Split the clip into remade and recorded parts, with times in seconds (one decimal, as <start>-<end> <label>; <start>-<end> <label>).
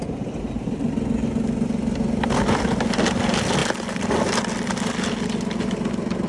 0.0-6.3 recorded